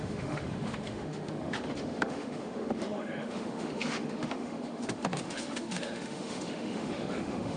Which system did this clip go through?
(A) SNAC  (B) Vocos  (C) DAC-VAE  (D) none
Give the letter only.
C